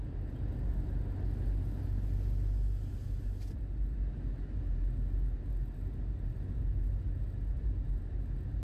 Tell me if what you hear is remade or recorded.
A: recorded